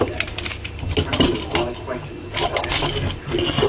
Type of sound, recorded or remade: recorded